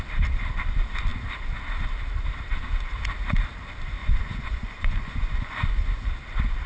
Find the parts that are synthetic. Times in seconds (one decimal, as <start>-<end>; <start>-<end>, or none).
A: 4.0-6.1